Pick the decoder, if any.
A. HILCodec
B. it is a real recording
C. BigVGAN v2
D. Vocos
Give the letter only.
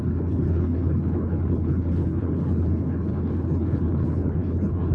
A